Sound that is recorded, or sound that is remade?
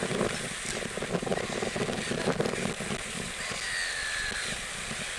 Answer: recorded